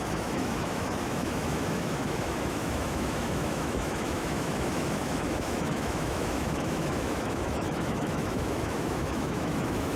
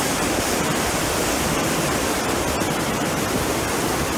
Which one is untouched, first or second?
second